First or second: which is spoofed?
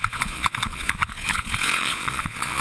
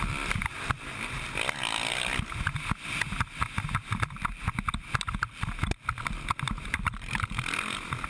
first